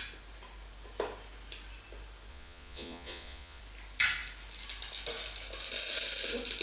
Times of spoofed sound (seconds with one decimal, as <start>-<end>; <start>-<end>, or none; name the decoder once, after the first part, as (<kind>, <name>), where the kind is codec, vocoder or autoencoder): 2.3-3.6 (vocoder, Vocos)